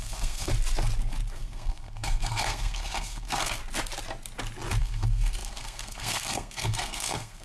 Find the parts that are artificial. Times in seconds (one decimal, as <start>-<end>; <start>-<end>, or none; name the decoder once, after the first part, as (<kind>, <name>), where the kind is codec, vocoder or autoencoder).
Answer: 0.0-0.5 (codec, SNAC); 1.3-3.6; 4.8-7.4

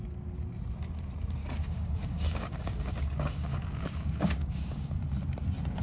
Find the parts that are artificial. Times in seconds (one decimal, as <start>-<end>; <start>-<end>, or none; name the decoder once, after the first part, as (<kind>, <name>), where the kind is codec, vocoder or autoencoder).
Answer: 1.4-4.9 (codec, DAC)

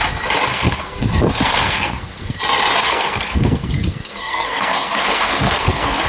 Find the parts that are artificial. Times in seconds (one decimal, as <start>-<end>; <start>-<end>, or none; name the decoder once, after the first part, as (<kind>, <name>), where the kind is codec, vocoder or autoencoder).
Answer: 0.5-2.4 (codec, SNAC); 2.8-6.1

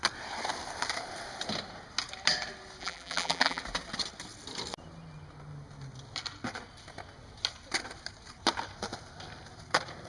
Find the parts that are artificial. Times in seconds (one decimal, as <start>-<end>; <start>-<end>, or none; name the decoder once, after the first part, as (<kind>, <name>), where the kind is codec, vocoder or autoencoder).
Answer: 2.8-3.6 (vocoder, BigVGAN v2)

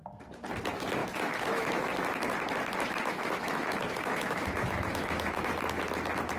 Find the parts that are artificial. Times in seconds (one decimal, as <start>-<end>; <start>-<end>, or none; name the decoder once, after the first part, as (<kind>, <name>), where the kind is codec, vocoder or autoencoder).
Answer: 1.0-1.9 (autoencoder, DAC-VAE); 3.0-5.5